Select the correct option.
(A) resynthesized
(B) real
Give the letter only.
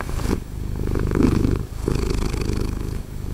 A